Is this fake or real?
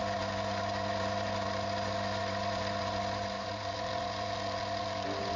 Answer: real